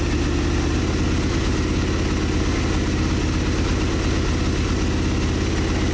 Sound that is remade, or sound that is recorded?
recorded